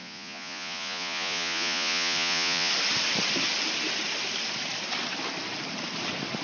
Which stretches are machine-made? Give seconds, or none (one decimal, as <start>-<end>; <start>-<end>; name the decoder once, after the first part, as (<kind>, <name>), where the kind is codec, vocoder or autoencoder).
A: 0.0-2.7 (vocoder, Vocos)

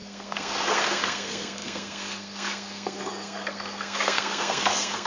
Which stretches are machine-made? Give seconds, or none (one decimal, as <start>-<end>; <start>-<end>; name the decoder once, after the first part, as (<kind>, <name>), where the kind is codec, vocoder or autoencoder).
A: 0.0-5.1 (codec, SNAC)